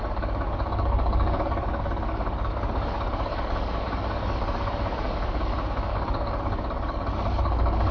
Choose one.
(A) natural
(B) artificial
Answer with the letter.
B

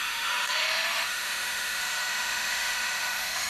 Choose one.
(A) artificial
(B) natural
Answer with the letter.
A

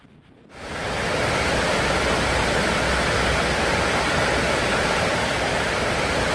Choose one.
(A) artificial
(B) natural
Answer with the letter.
B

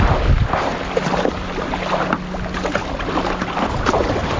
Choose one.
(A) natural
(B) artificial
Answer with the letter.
A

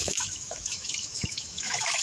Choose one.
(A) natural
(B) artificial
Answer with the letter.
B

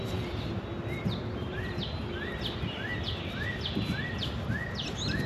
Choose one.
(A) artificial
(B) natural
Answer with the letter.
B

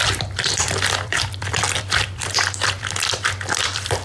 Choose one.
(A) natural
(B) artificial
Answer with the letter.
B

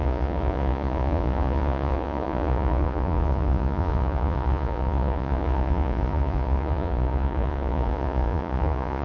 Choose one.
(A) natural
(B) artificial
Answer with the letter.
B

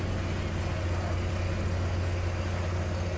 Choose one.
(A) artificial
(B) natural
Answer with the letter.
B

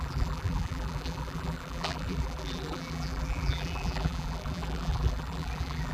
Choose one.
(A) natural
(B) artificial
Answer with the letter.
B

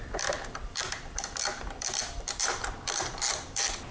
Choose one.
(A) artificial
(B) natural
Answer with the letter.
A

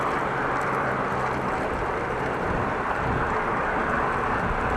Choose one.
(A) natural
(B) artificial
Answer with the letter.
A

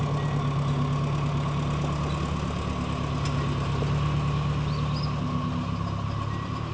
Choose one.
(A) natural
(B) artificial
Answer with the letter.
A